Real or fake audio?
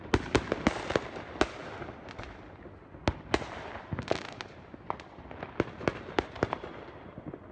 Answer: real